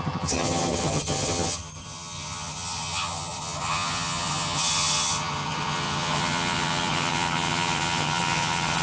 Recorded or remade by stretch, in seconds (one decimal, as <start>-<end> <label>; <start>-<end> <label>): 0.0-8.8 remade